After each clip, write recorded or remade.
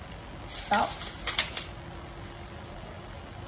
recorded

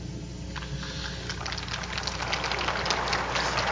recorded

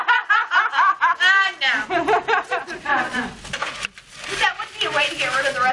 recorded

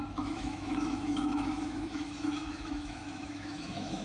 remade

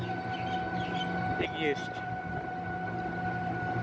recorded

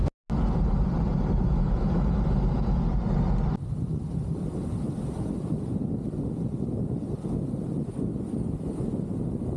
recorded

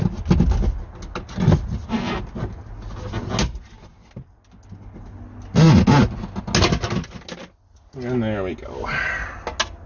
recorded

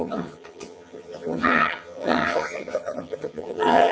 remade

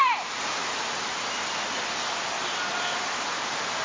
remade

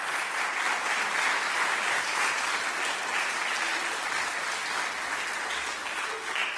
recorded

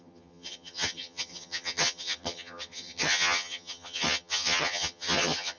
remade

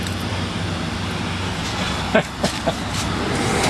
recorded